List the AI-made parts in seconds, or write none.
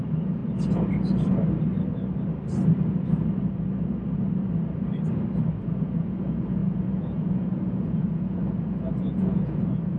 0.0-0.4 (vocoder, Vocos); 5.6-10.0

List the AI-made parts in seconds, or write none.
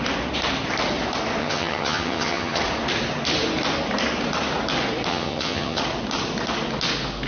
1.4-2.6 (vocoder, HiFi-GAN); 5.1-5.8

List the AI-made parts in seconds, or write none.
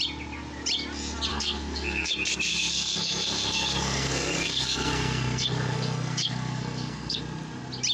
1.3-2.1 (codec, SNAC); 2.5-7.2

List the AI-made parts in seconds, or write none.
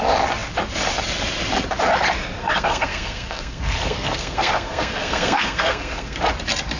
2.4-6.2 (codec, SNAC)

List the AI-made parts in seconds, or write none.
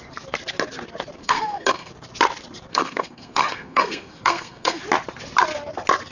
1.2-1.9 (codec, SNAC); 2.7-4.8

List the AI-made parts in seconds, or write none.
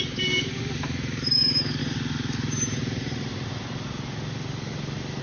0.0-1.8 (codec, DAC)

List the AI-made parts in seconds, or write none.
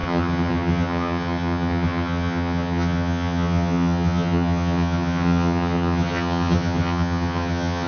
0.0-7.9 (vocoder, HiFi-GAN)